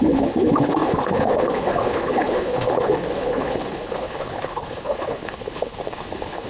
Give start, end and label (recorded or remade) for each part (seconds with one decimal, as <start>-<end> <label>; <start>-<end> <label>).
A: 0.0-6.5 remade